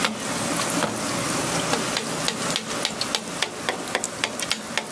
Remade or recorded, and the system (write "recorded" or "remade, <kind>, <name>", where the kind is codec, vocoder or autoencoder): recorded